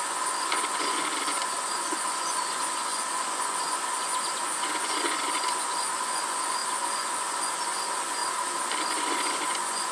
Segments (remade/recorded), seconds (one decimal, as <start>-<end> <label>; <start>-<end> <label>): 0.0-8.2 remade; 8.2-8.8 recorded; 8.8-9.9 remade